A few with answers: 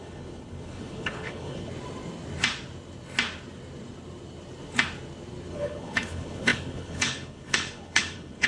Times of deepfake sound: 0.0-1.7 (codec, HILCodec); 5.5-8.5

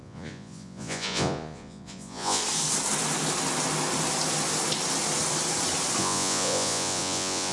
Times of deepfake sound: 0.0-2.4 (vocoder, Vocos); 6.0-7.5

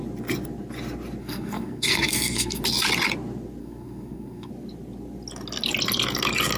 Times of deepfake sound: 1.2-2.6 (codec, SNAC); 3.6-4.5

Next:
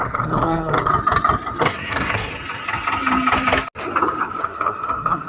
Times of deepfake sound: 0.0-0.9 (codec, SNAC); 1.6-2.3; 4.4-5.3

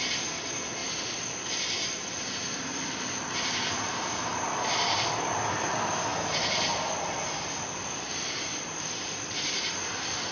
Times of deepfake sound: 0.0-6.1 (vocoder, BigVGAN v2); 7.6-10.3

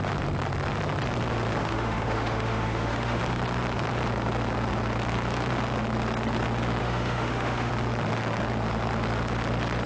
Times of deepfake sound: 1.6-3.2 (autoencoder, DAC-VAE); 6.8-7.7